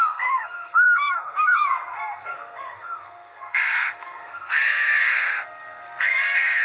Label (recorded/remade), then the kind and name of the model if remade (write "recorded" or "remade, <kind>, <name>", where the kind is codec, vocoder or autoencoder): remade, codec, SNAC